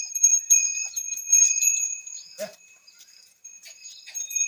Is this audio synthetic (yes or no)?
yes